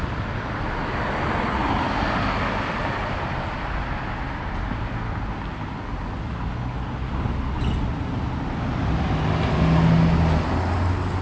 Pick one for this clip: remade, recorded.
recorded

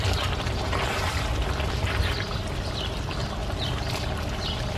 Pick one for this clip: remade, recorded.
recorded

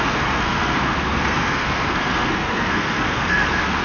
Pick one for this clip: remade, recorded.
remade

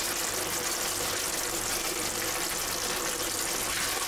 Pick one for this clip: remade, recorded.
recorded